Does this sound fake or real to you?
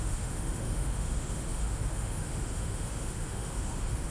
fake